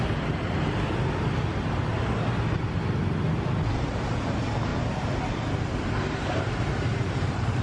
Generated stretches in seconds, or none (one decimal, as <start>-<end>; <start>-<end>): 4.7-5.6; 6.9-7.6